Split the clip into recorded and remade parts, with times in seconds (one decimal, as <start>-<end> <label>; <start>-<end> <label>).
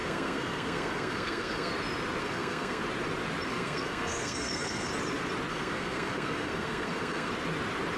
0.0-1.7 remade; 1.7-2.2 recorded; 2.2-2.8 remade; 2.8-3.5 recorded; 3.5-4.9 remade; 4.9-5.5 recorded; 5.5-7.3 remade; 7.3-8.0 recorded